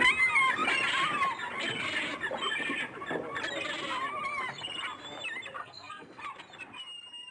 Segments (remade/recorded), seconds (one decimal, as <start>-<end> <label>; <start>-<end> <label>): 0.0-5.6 recorded; 5.6-6.2 remade; 6.2-7.3 recorded